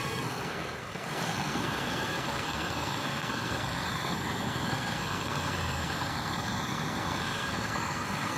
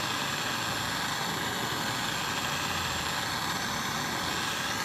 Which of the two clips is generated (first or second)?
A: first